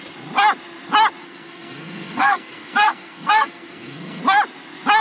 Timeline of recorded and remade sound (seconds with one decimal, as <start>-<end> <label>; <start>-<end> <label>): 0.0-1.2 recorded; 1.2-4.2 remade; 4.2-5.0 recorded

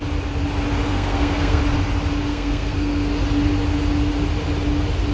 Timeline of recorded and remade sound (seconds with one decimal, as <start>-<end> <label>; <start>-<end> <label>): 0.0-0.9 recorded; 0.9-1.6 remade; 1.6-2.3 recorded; 2.3-3.1 remade; 3.1-5.1 recorded

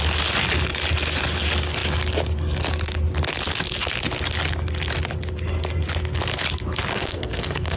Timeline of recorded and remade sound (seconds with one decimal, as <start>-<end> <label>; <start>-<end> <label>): 0.0-6.9 recorded; 6.9-7.8 remade